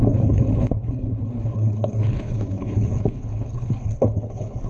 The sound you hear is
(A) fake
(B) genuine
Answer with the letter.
A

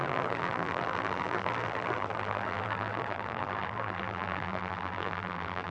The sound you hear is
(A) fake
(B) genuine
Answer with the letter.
A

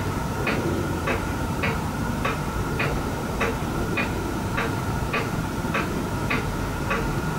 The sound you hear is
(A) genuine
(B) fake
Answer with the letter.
B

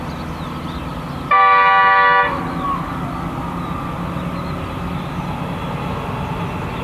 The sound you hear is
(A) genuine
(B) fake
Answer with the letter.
A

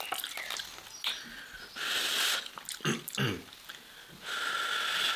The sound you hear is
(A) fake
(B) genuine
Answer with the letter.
B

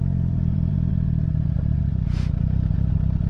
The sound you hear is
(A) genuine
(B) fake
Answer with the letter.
B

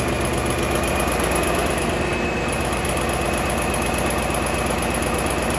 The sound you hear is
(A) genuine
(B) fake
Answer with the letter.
A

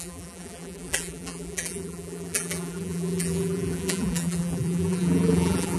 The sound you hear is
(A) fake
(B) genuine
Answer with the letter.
A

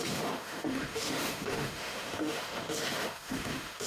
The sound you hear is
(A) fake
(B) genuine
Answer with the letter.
A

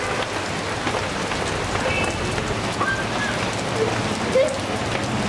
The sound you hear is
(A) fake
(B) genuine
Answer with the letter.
B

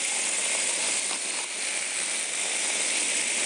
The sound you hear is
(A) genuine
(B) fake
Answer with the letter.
A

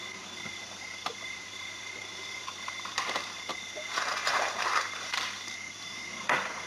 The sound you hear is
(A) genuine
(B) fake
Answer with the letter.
B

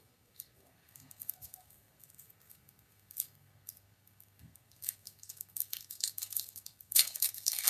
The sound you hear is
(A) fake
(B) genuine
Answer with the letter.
A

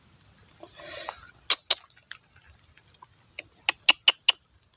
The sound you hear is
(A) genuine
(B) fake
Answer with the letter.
A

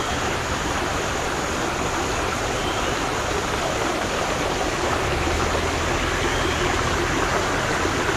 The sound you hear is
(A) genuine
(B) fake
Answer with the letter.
A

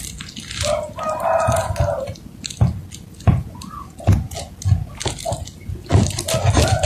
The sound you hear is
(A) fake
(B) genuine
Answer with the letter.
B